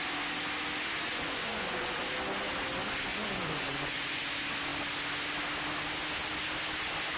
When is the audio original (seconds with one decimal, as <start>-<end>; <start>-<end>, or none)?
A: 0.0-1.1; 2.0-3.1; 4.2-7.2